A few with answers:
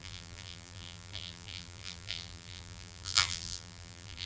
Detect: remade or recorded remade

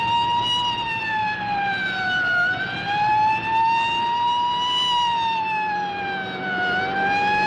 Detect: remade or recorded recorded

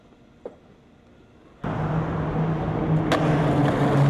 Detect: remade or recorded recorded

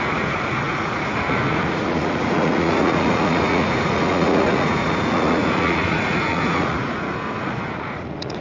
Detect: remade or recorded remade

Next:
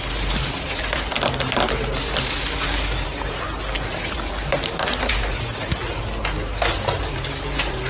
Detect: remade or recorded recorded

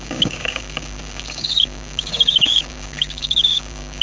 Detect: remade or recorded remade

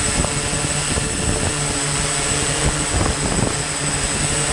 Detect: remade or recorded recorded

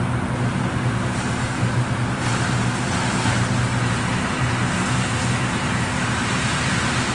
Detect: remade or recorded recorded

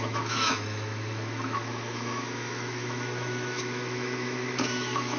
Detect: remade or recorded remade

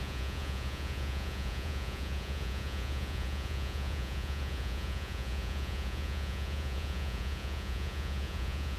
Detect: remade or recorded remade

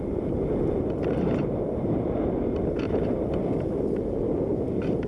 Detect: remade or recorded recorded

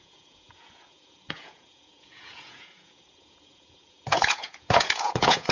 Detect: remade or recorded remade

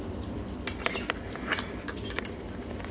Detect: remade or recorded remade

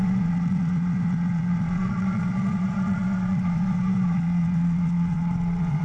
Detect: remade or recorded remade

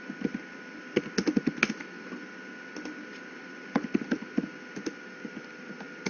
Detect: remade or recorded recorded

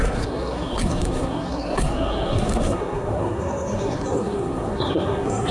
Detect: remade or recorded remade